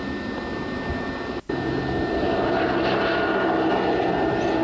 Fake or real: real